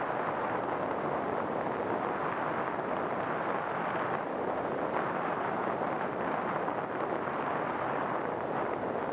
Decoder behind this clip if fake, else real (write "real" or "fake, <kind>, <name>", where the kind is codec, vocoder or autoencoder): real